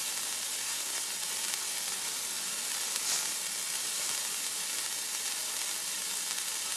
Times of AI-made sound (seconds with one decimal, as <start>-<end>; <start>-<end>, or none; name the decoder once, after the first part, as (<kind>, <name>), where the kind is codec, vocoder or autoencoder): 0.6-1.1 (codec, SNAC)